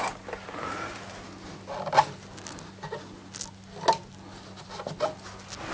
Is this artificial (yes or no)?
no